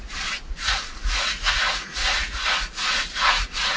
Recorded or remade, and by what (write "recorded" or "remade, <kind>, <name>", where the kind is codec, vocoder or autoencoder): remade, vocoder, Vocos